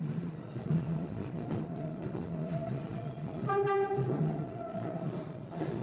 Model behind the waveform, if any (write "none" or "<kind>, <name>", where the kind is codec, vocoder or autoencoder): vocoder, Vocos